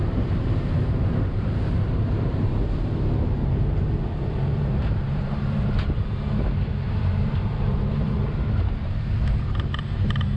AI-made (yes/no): yes